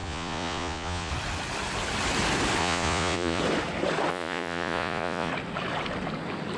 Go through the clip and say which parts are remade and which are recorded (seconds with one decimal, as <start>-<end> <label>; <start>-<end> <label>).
0.0-1.1 remade; 1.1-2.6 recorded; 2.6-3.4 remade; 3.4-4.1 recorded; 4.1-5.3 remade; 5.3-6.6 recorded